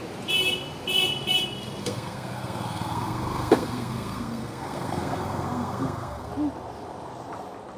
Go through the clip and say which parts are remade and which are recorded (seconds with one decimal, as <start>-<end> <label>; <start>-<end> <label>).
0.0-1.8 recorded; 1.8-6.3 remade; 6.3-7.8 recorded